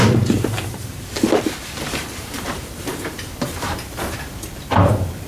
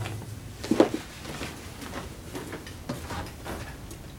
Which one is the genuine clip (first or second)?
second